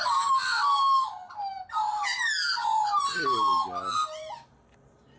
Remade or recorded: recorded